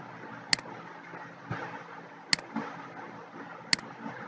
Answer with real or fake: real